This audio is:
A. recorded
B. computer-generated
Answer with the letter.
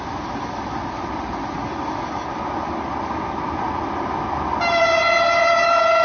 A